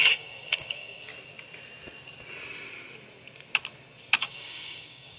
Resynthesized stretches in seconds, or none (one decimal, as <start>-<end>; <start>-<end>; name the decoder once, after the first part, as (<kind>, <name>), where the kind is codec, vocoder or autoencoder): 0.0-1.1 (codec, DAC); 4.2-5.2